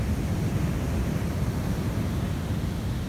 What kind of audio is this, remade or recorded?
recorded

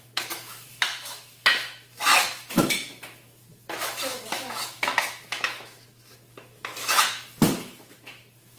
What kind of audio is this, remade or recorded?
remade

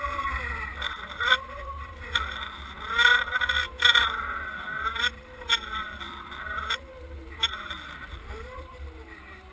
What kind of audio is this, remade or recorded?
remade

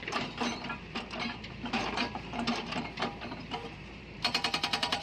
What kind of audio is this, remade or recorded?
remade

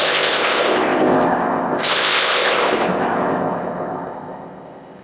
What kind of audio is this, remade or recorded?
remade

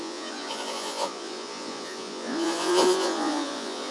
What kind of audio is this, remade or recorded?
remade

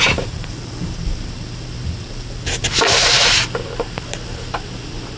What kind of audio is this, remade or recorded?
recorded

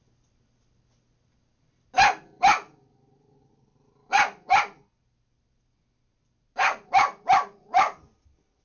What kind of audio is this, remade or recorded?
recorded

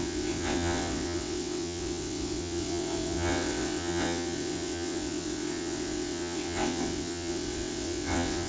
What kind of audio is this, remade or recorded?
remade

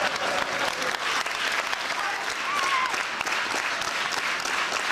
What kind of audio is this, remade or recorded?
recorded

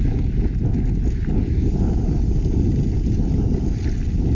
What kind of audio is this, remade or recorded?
recorded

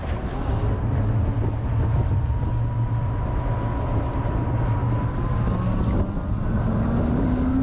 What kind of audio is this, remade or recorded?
recorded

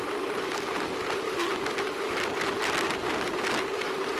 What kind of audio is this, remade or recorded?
remade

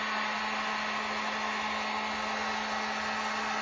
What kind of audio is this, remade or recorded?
recorded